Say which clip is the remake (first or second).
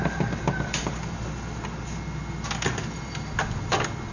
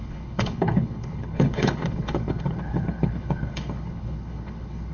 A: second